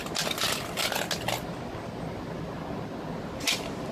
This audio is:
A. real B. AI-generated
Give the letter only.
A